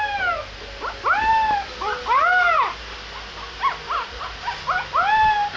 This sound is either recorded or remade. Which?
recorded